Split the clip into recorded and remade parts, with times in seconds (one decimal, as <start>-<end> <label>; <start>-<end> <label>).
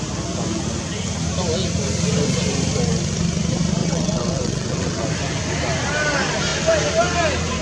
0.0-3.8 recorded; 3.8-5.0 remade; 5.0-7.6 recorded